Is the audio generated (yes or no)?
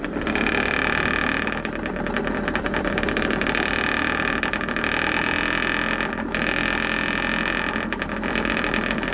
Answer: no